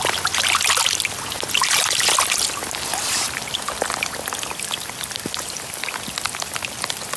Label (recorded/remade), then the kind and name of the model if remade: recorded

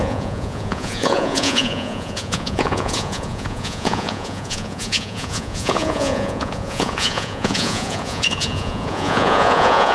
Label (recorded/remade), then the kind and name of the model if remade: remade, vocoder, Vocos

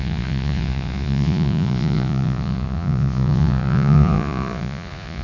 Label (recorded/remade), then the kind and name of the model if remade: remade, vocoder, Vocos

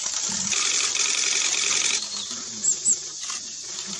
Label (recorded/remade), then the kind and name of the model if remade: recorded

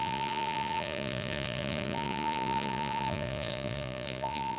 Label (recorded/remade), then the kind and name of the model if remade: remade, vocoder, Vocos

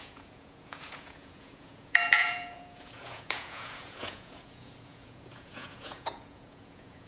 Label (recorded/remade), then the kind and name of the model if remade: remade, vocoder, Vocos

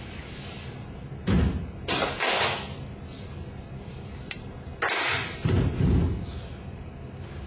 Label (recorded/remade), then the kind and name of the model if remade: recorded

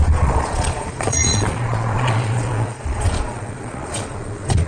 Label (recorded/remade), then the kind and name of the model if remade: remade, vocoder, Vocos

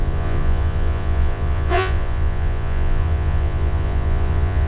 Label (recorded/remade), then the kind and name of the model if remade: remade, vocoder, Vocos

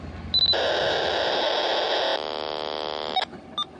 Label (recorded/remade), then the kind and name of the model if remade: recorded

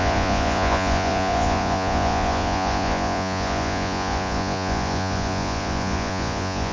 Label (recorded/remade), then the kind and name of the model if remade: remade, vocoder, Vocos